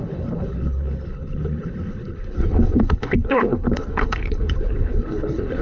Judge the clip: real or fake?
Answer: fake